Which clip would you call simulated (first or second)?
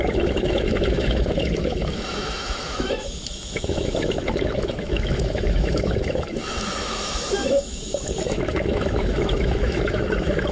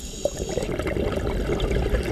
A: first